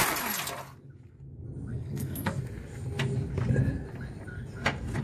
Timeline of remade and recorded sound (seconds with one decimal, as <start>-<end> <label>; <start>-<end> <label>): 0.0-1.7 recorded; 1.7-2.4 remade; 2.4-5.0 recorded